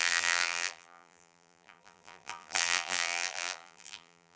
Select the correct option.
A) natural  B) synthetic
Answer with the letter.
B